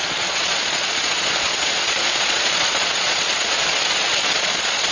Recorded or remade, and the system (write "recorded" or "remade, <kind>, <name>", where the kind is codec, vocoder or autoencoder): remade, vocoder, Vocos